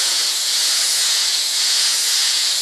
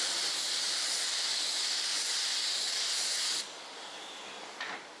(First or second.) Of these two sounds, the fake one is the first